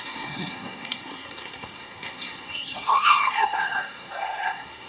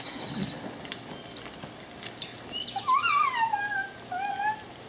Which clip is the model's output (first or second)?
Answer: first